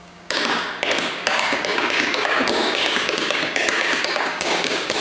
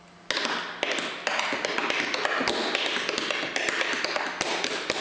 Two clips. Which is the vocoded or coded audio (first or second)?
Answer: first